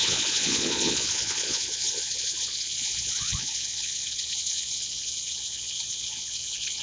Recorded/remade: remade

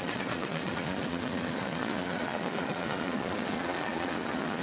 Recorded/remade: remade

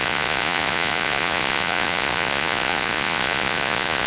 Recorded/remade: remade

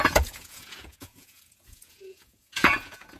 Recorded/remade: remade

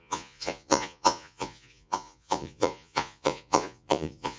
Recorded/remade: remade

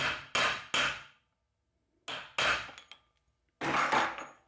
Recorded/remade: recorded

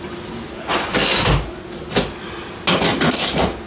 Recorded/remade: recorded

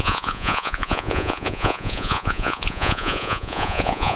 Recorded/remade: remade